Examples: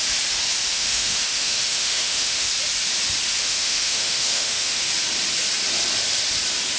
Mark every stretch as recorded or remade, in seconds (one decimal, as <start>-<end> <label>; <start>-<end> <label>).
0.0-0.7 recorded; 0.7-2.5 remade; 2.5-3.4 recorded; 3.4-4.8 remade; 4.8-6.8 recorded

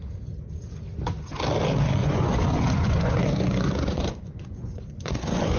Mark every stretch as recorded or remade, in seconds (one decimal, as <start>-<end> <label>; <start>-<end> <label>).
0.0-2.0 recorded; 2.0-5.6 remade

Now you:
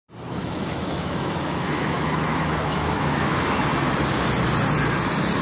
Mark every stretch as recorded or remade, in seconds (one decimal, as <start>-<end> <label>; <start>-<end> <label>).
0.0-0.4 recorded; 0.4-3.6 remade; 3.6-5.4 recorded

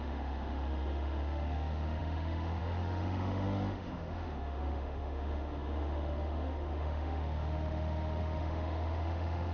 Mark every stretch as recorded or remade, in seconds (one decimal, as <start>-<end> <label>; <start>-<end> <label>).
0.0-9.5 remade

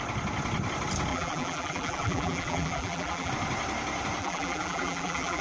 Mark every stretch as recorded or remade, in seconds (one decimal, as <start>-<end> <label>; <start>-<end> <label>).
0.0-1.1 recorded; 1.1-3.3 remade; 3.3-4.2 recorded; 4.2-5.4 remade